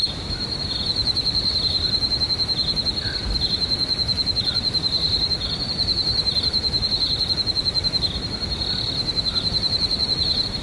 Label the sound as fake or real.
real